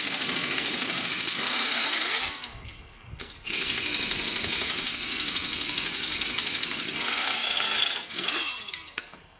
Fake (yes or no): yes